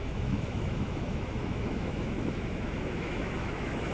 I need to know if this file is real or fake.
fake